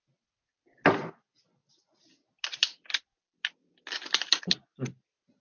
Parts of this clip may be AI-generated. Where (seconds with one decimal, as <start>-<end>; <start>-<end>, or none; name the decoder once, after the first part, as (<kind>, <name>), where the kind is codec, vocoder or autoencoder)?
none

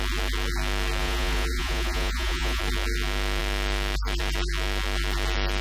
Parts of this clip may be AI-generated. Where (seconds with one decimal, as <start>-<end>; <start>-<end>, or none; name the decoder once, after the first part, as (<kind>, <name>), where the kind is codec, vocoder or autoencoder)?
1.0-2.6 (vocoder, Vocos)

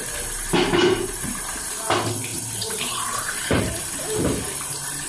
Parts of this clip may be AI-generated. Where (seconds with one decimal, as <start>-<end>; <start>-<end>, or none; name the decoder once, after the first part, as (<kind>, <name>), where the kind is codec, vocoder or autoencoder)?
0.8-1.7 (vocoder, BigVGAN v2); 2.3-3.6

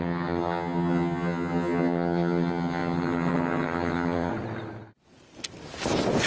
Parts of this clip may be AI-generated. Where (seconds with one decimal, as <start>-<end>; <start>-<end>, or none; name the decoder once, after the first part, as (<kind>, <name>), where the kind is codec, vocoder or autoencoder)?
0.0-4.3 (vocoder, HiFi-GAN)

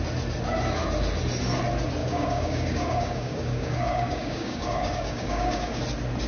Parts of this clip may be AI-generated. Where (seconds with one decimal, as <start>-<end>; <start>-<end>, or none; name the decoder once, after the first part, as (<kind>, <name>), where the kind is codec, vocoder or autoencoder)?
2.0-5.8 (codec, DAC)